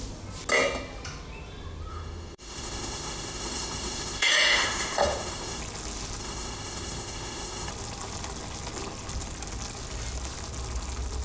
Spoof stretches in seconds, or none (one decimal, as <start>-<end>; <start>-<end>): 1.9-5.6; 6.2-7.7